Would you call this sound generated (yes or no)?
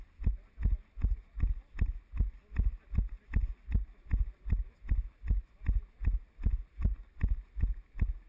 no